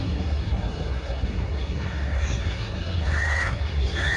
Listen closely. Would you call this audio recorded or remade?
remade